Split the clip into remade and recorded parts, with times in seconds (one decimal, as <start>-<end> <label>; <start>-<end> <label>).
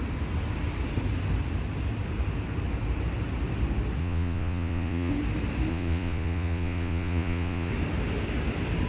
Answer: 0.0-4.0 recorded; 4.0-5.1 remade; 5.1-5.7 recorded; 5.7-7.7 remade; 7.7-8.9 recorded